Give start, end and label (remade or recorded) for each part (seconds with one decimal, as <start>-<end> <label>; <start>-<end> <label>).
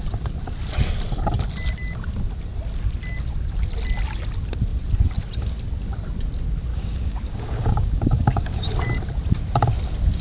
0.0-6.7 recorded; 6.7-8.7 remade; 8.7-10.2 recorded